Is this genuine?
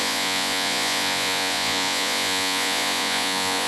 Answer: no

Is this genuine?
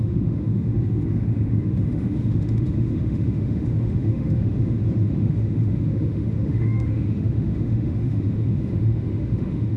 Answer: no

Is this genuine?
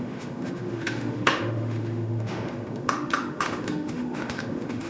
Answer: no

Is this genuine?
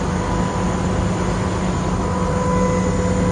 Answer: yes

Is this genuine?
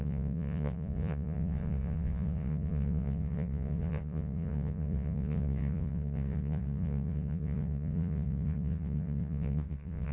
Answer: no